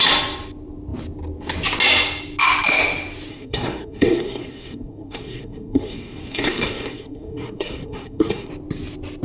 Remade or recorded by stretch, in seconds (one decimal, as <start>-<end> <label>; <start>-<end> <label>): 0.0-3.3 recorded; 3.3-8.5 remade; 8.5-9.2 recorded

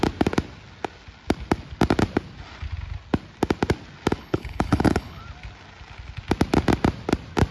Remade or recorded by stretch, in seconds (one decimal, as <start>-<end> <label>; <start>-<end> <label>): 0.0-4.2 recorded; 4.2-5.2 remade; 5.2-7.5 recorded

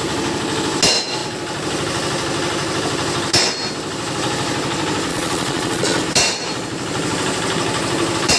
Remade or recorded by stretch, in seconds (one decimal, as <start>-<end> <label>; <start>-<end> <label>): 0.0-5.1 recorded; 5.1-6.0 remade; 6.0-8.4 recorded

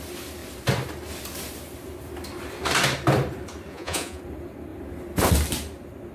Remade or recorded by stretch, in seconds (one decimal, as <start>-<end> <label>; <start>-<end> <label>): 0.0-3.7 recorded; 3.7-4.2 remade; 4.2-6.1 recorded

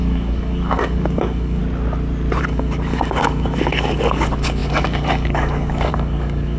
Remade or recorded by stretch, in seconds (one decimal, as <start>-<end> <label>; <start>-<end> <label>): 0.0-1.6 remade; 1.6-2.4 recorded; 2.4-6.6 remade

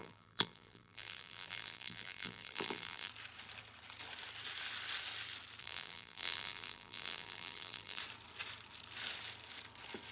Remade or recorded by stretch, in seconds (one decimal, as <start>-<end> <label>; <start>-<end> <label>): 0.0-3.1 remade; 3.1-5.6 recorded; 5.6-8.0 remade; 8.0-10.1 recorded